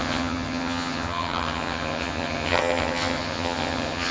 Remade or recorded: remade